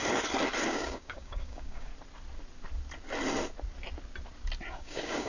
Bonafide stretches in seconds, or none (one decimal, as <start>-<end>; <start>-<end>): 0.0-0.7; 1.9-4.7

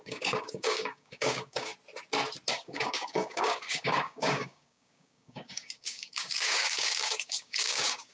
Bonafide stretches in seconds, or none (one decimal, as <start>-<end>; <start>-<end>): 1.7-2.5

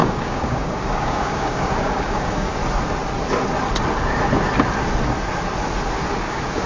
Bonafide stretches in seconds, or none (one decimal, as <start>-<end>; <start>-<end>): 2.6-6.2

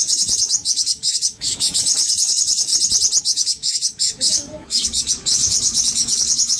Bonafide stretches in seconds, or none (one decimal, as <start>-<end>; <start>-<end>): 2.7-3.2